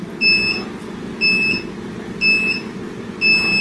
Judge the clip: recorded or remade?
recorded